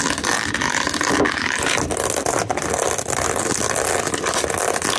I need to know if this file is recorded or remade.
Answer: recorded